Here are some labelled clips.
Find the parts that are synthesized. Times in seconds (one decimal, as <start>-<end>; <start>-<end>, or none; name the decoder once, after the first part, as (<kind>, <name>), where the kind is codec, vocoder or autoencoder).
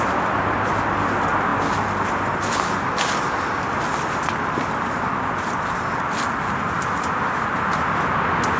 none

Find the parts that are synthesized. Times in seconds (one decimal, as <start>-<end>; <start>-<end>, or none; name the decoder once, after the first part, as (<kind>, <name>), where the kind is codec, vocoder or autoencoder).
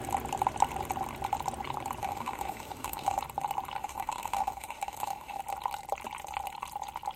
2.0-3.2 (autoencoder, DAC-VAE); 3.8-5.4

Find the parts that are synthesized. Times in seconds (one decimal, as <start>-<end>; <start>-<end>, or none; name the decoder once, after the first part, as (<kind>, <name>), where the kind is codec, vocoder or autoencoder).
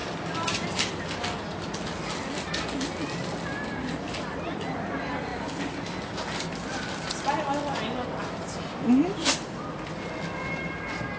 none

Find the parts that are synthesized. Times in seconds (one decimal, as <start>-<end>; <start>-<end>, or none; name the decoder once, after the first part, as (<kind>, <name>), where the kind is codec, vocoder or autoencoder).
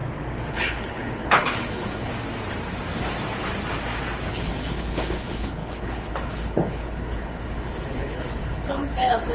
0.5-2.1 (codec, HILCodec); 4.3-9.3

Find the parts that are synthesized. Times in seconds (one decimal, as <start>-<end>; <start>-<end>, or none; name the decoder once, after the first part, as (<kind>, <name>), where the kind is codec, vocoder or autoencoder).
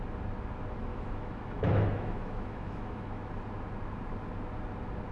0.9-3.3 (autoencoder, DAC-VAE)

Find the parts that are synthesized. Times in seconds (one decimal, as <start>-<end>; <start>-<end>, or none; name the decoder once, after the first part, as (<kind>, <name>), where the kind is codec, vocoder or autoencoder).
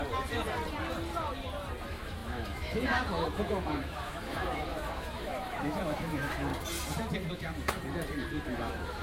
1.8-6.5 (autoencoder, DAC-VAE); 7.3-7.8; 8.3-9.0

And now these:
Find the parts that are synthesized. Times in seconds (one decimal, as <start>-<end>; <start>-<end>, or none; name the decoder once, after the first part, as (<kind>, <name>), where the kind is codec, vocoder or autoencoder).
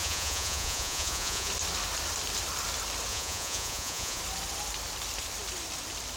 0.0-1.5 (vocoder, Vocos); 3.1-4.2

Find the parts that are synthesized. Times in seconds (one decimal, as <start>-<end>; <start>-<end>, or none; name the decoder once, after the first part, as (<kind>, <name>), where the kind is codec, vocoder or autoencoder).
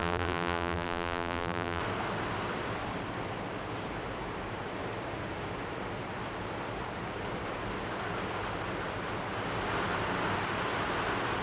0.0-1.8 (vocoder, BigVGAN v2)